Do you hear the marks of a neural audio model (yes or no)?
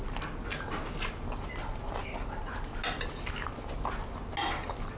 no